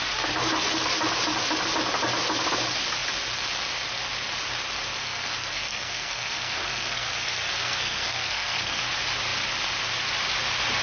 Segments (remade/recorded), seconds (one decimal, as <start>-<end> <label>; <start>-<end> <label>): 0.0-5.0 recorded; 5.0-8.8 remade; 8.8-10.8 recorded